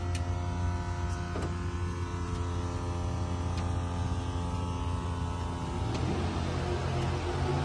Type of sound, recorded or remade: recorded